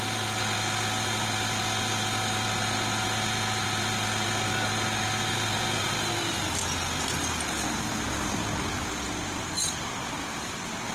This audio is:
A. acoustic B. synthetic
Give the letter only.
A